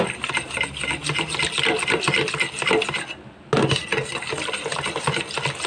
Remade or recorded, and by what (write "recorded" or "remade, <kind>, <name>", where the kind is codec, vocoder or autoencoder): recorded